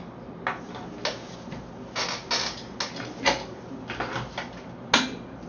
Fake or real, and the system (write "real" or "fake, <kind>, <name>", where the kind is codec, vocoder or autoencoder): real